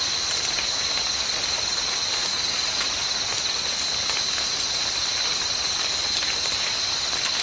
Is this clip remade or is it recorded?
recorded